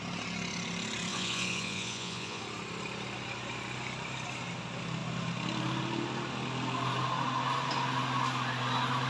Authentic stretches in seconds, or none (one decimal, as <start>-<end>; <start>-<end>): 0.0-1.1; 2.4-9.1